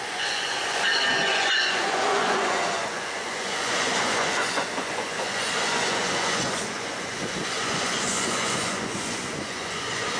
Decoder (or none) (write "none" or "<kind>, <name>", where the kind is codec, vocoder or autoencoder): vocoder, Vocos